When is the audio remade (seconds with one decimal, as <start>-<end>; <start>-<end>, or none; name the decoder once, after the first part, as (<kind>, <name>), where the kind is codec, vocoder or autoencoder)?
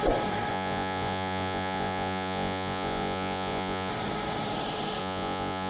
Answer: 0.5-3.9 (vocoder, Vocos); 5.0-5.7